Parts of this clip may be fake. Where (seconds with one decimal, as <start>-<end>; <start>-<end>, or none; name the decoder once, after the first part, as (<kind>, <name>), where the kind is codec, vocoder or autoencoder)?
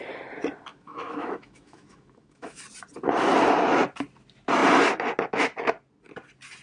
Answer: 0.7-2.6 (autoencoder, DAC-VAE)